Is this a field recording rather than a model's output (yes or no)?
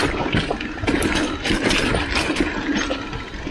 yes